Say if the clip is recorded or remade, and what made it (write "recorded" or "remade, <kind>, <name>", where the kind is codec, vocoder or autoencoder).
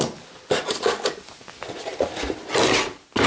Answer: recorded